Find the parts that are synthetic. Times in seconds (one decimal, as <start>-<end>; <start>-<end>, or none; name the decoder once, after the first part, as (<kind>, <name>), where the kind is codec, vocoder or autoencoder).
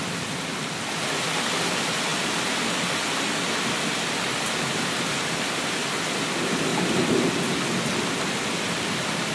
none